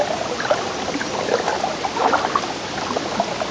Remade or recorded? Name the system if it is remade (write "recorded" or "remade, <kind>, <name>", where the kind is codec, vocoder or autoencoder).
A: recorded